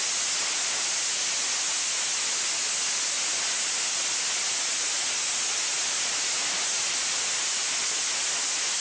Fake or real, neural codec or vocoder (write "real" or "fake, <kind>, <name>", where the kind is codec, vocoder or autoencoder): real